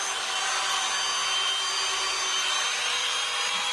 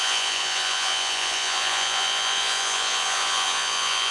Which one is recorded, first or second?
first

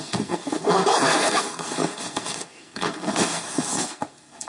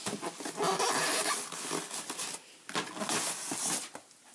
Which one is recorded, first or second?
second